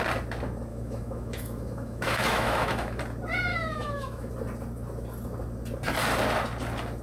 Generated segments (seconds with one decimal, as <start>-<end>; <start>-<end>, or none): 0.7-3.0; 3.5-4.3

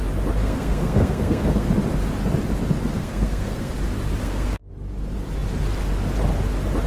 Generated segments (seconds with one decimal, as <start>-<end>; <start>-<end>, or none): 0.4-1.7; 3.0-3.7; 4.2-4.7

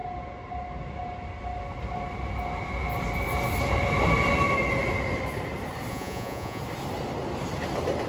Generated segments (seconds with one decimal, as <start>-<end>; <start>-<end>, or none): 5.9-6.6

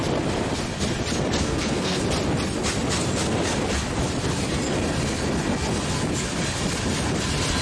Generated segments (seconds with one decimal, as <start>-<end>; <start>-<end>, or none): 1.4-2.0

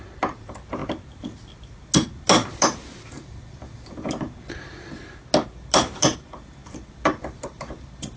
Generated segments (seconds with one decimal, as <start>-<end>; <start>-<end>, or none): none